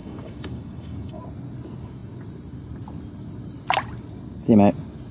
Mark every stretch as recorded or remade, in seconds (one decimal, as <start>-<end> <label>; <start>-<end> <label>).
0.0-1.2 remade; 1.2-5.1 recorded